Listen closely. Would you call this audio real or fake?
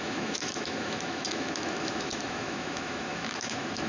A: fake